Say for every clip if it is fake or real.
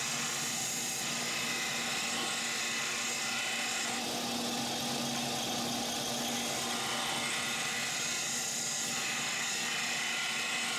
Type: real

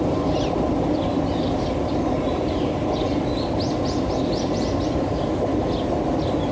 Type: real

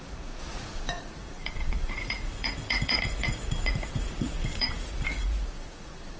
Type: fake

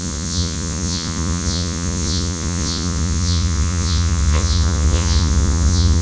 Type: fake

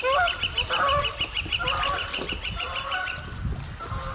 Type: real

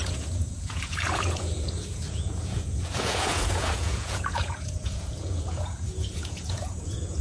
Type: fake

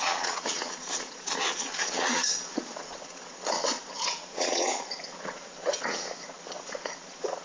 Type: fake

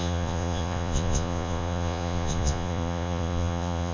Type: fake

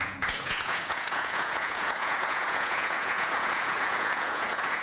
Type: fake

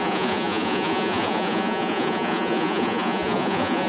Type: fake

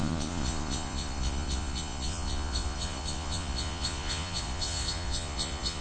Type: fake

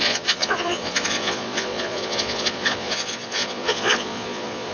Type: fake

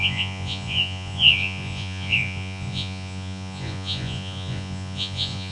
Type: fake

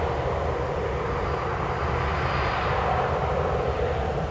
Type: real